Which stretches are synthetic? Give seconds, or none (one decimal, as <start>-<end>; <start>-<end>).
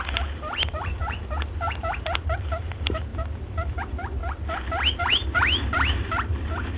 0.0-4.2; 5.0-6.8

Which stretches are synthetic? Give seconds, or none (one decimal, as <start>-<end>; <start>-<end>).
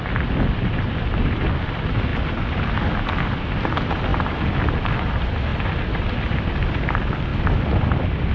none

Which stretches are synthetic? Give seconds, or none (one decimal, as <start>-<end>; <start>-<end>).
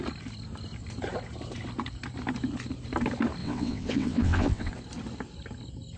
3.4-4.7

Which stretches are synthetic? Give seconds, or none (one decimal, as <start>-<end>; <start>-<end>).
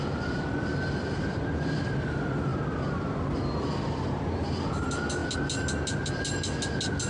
none